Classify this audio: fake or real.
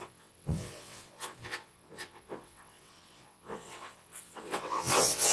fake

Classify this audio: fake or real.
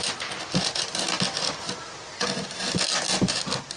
real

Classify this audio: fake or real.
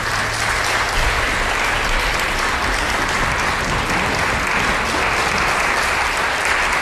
real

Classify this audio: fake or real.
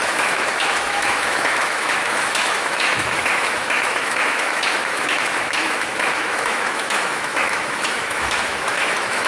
fake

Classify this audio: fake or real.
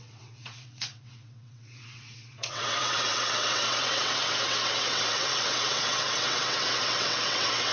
fake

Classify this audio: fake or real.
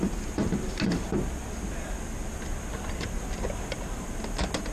real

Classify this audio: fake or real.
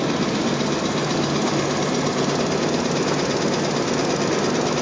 real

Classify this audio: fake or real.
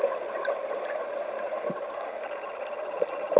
real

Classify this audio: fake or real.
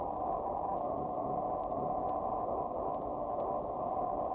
real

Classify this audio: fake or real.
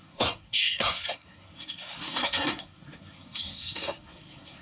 fake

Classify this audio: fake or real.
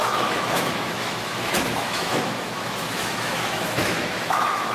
fake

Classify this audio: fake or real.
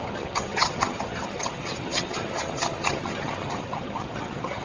fake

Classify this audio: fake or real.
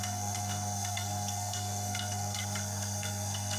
fake